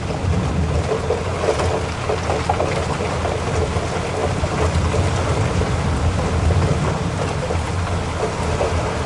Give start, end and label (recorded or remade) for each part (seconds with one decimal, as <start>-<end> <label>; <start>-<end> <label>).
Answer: 0.0-4.2 recorded; 4.2-7.7 remade; 7.7-9.1 recorded